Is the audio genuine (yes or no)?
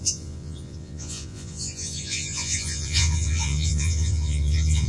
no